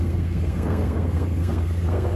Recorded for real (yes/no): no